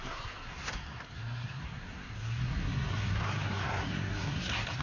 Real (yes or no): no